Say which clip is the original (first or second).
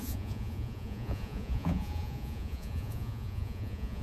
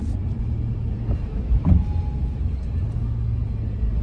second